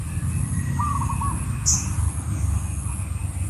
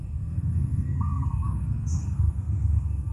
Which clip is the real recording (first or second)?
first